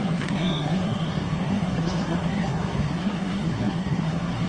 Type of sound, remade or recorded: remade